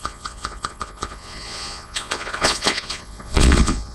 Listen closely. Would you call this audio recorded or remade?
remade